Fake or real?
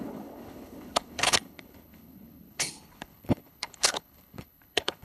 fake